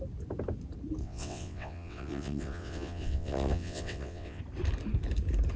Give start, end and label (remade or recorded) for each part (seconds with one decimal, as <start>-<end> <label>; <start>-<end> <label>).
0.0-1.0 recorded; 1.0-4.4 remade; 4.4-5.6 recorded